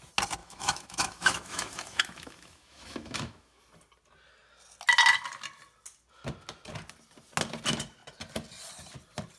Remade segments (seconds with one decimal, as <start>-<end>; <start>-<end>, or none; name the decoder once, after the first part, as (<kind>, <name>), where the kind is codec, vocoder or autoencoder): 0.4-3.6 (autoencoder, DAC-VAE)